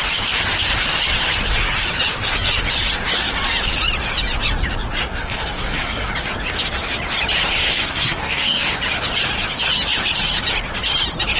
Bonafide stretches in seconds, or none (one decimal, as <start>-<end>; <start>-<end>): 0.0-5.0; 6.1-7.5; 8.7-11.4